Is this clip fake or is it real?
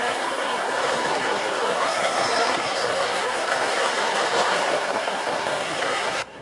fake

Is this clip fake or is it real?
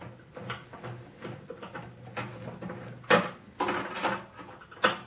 real